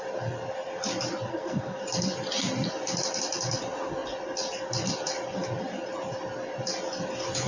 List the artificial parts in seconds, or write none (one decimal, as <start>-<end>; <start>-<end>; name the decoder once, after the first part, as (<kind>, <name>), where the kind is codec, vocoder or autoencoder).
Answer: 1.3-1.8 (codec, SNAC)